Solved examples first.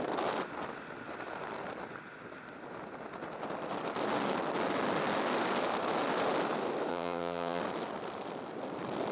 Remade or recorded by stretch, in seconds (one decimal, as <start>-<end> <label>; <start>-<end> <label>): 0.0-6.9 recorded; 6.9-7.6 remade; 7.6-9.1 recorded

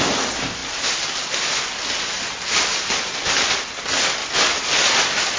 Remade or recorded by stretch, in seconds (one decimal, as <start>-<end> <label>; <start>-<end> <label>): 0.0-5.4 recorded

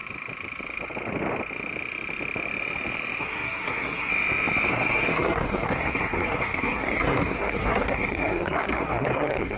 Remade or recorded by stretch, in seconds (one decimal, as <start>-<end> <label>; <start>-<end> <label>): 0.0-3.2 recorded; 3.2-4.1 remade; 4.1-4.7 recorded; 4.7-9.6 remade

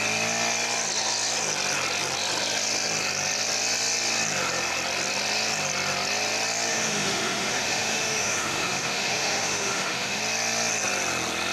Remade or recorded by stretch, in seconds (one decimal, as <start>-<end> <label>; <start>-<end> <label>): 0.0-6.7 recorded; 6.7-10.2 remade; 10.2-11.5 recorded

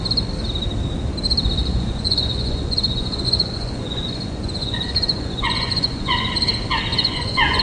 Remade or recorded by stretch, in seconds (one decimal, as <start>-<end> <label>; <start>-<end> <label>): 0.0-1.7 recorded; 1.7-6.3 remade; 6.3-6.9 recorded; 6.9-7.6 remade

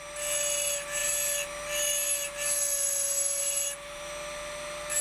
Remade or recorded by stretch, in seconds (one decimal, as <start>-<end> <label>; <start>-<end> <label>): 0.0-5.0 recorded

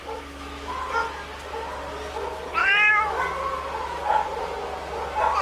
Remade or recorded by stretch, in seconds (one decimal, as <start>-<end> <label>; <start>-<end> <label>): 0.0-0.8 remade; 0.8-2.6 recorded; 2.6-3.2 remade; 3.2-5.4 recorded

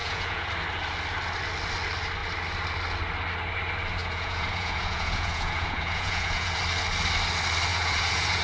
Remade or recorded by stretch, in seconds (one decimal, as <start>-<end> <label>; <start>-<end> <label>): 0.0-0.5 remade; 0.5-4.0 recorded; 4.0-6.6 remade; 6.6-7.7 recorded; 7.7-8.4 remade